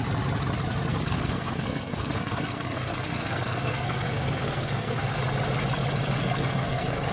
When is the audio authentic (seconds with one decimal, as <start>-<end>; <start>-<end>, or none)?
0.0-0.9; 5.2-6.2